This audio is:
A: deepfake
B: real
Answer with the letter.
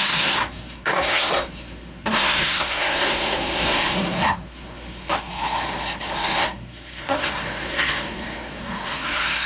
A